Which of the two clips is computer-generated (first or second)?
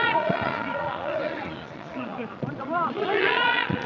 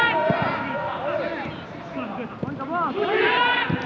first